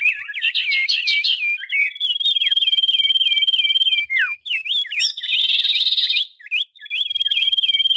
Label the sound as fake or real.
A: real